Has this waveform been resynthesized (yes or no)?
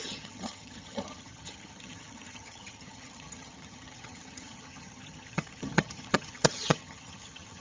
yes